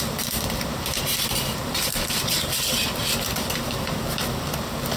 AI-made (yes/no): yes